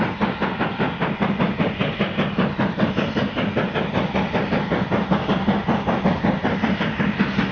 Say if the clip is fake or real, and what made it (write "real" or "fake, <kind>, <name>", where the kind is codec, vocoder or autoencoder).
real